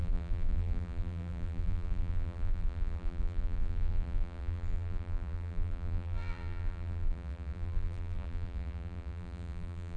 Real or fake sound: fake